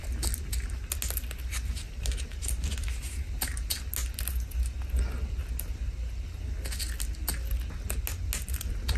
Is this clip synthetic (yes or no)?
no